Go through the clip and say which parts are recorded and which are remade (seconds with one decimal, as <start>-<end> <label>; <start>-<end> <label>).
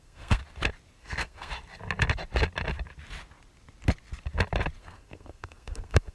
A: 0.0-0.4 remade; 0.4-1.0 recorded; 1.0-1.5 remade; 1.5-4.8 recorded; 4.8-6.1 remade